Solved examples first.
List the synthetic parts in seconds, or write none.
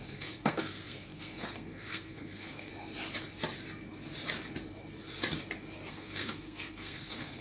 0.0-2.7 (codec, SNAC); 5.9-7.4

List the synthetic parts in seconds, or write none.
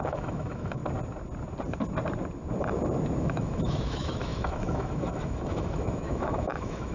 0.0-0.8 (autoencoder, DAC-VAE); 3.2-6.9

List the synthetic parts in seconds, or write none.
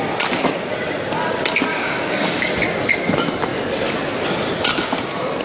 1.7-2.5 (codec, DAC)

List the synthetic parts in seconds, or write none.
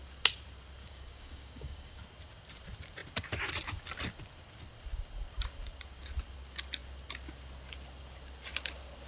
0.8-2.0 (codec, DAC)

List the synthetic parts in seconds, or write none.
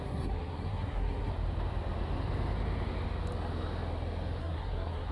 0.0-1.3 (codec, SNAC); 4.4-5.1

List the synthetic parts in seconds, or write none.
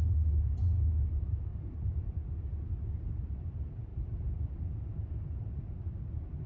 none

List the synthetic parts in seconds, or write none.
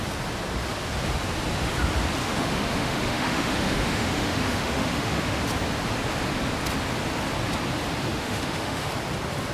2.2-5.4 (autoencoder, DAC-VAE); 8.1-8.9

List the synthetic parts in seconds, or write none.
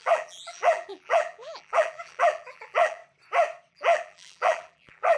0.0-3.0 (vocoder, BigVGAN v2); 3.7-5.2